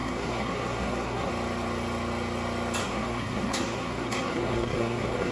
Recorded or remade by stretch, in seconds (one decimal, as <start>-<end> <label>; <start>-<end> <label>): 0.0-1.3 remade; 1.3-2.8 recorded; 2.8-5.3 remade